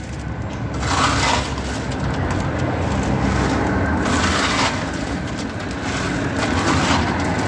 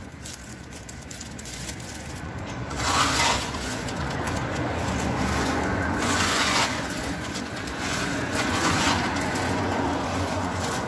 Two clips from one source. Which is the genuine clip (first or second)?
first